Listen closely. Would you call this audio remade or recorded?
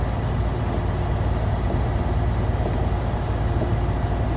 recorded